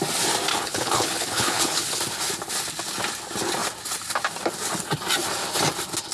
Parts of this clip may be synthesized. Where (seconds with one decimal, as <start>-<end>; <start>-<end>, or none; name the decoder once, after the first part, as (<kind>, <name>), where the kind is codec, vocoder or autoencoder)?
0.5-2.0 (codec, HILCodec)